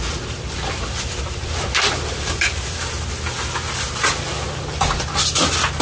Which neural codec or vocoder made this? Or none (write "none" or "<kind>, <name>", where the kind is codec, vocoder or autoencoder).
none